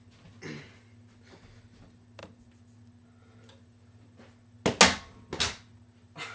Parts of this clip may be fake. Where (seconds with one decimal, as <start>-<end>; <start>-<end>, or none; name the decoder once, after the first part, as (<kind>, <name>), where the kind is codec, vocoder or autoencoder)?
none